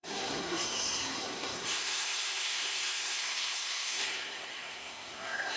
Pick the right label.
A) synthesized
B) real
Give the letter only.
A